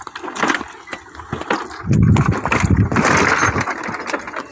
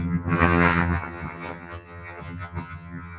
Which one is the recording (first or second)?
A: first